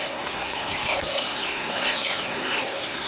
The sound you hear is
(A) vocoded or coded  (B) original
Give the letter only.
A